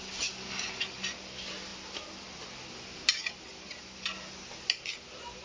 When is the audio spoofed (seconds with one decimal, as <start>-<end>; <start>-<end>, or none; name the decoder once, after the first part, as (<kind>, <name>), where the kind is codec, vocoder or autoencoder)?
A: none